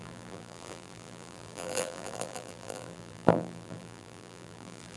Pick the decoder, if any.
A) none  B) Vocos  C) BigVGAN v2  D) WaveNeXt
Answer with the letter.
C